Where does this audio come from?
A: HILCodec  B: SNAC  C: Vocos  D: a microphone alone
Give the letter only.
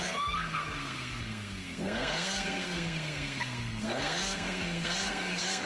B